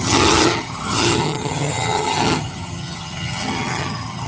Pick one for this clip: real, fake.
fake